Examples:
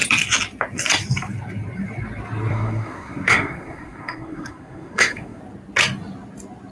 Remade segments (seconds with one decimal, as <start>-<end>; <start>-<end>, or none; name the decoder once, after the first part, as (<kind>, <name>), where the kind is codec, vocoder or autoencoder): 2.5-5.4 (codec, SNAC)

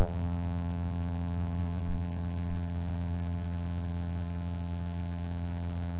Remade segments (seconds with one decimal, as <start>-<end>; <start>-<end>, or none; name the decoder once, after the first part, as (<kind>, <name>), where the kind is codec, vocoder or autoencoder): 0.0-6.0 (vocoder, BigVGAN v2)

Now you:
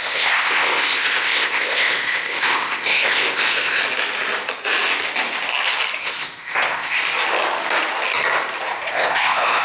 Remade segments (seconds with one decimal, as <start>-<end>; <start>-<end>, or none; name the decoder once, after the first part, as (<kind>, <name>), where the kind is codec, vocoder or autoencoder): 0.0-3.8 (codec, ZipCodec); 6.0-7.0; 8.9-9.6

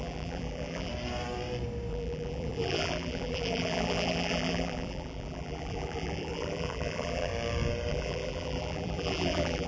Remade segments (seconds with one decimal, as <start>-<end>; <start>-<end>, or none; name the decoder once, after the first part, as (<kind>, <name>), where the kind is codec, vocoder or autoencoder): 0.0-0.9 (vocoder, BigVGAN v2); 1.9-7.3; 7.9-9.7

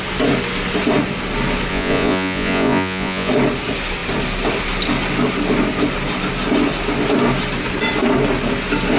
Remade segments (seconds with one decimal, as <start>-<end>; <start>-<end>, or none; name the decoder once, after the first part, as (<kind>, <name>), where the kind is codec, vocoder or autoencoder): 1.7-3.3 (vocoder, Vocos)